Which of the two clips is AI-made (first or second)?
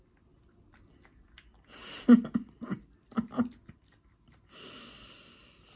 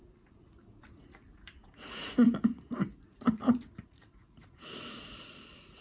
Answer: second